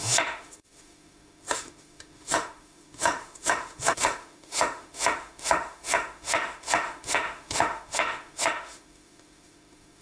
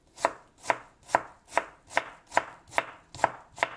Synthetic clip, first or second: first